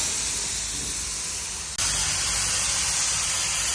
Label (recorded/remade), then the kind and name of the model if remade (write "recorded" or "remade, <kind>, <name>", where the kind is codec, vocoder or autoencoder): recorded